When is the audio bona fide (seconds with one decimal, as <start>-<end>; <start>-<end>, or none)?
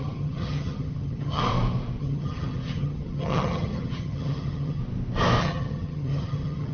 1.4-2.0; 4.8-5.4